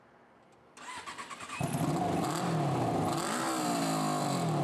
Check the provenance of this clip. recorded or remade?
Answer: recorded